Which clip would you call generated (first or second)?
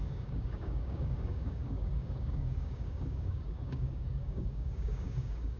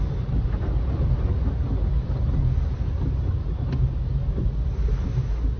first